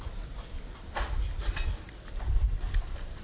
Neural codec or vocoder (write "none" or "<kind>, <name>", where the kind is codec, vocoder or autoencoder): vocoder, BigVGAN v2